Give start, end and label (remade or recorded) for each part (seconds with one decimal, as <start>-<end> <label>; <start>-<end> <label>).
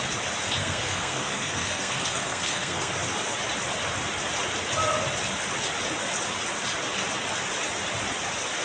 0.0-0.6 recorded; 0.6-2.9 remade; 2.9-8.6 recorded